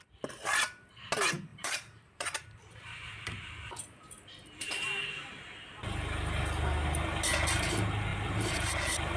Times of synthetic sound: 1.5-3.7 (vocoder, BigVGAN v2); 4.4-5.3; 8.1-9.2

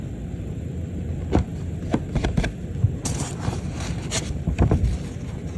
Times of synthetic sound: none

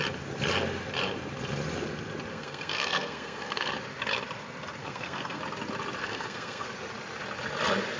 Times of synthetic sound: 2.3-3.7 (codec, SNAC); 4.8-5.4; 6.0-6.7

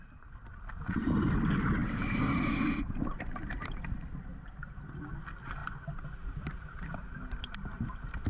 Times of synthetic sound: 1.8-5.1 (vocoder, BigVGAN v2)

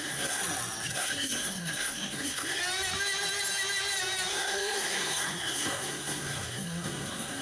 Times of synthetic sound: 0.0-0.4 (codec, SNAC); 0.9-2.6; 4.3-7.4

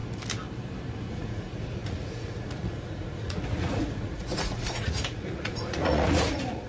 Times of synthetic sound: 1.1-6.7 (vocoder, Vocos)

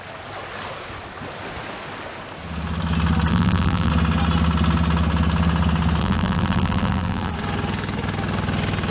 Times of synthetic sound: 3.3-3.9 (vocoder, BigVGAN v2); 6.0-7.3